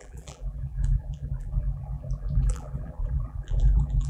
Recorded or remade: remade